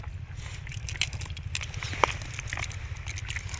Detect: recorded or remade recorded